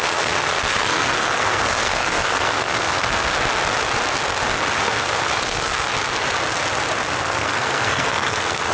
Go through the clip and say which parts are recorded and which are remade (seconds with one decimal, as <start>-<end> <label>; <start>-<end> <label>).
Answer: 0.0-3.3 remade; 3.3-4.8 recorded; 4.8-5.9 remade; 5.9-7.2 recorded; 7.2-8.7 remade